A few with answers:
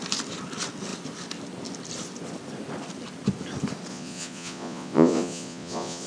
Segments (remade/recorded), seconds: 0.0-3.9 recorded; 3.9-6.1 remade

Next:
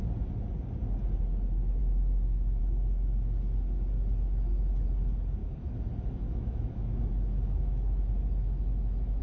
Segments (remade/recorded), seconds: 0.0-1.8 recorded; 1.8-2.6 remade; 2.6-5.4 recorded; 5.4-9.2 remade

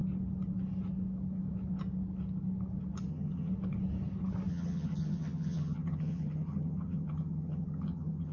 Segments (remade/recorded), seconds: 0.0-3.1 recorded; 3.1-3.5 remade; 3.5-4.5 recorded; 4.5-8.3 remade